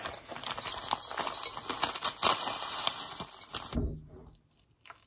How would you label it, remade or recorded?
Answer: recorded